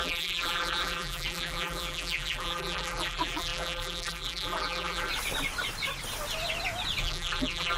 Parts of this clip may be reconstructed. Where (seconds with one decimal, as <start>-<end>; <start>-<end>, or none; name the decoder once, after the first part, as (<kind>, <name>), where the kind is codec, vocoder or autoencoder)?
0.0-5.1 (vocoder, BigVGAN v2); 7.0-7.8